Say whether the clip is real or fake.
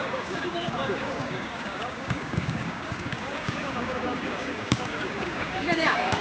fake